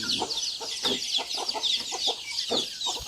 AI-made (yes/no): no